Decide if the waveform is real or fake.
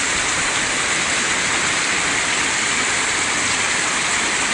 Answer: fake